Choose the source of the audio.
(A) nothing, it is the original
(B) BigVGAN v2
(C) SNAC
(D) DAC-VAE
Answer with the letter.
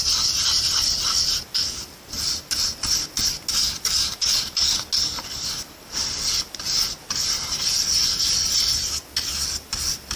A